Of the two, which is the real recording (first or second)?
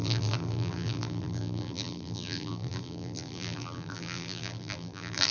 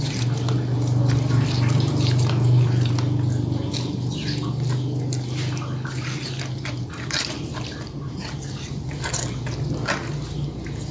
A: second